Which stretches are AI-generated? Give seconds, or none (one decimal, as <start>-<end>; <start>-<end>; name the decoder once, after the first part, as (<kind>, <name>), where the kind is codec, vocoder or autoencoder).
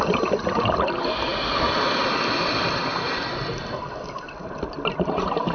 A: none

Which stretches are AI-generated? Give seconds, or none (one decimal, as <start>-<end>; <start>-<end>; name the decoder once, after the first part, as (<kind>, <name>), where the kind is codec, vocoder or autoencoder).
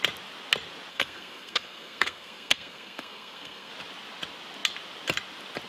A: 0.9-3.7 (codec, SNAC)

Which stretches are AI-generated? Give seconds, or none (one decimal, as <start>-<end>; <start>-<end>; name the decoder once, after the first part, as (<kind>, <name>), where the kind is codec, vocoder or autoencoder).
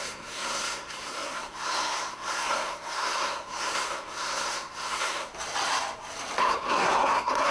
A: 0.0-5.3 (codec, SNAC); 6.4-7.5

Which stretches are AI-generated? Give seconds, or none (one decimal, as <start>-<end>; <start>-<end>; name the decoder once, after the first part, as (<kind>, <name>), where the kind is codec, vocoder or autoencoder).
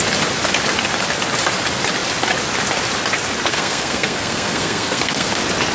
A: 3.5-5.3 (codec, SNAC)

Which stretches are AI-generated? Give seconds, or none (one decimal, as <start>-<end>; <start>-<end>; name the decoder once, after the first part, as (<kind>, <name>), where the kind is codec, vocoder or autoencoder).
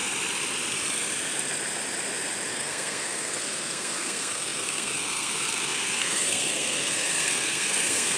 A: 2.5-8.2 (codec, SNAC)